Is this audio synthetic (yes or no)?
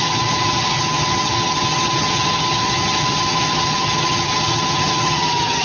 yes